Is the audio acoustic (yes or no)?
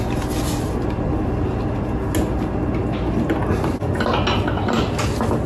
yes